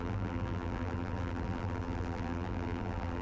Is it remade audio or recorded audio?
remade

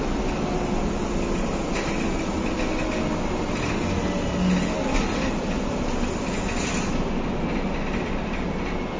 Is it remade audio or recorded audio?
recorded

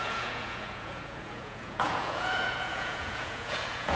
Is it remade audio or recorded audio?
remade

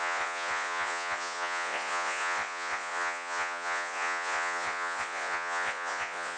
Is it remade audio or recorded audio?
remade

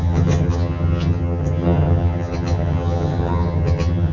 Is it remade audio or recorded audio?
remade